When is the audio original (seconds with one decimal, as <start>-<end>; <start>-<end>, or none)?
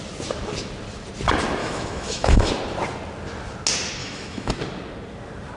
0.0-1.6; 2.5-4.0; 4.5-5.6